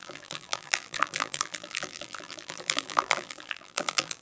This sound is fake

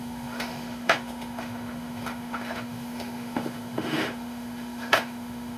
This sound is fake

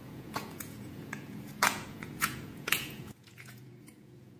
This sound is fake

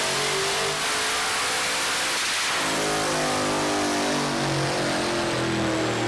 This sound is real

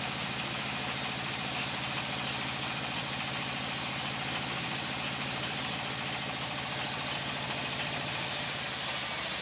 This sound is real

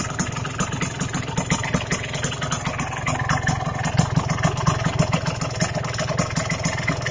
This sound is real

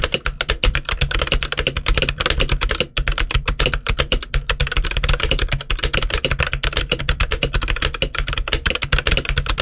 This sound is real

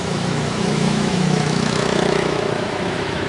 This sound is fake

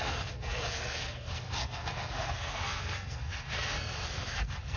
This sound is fake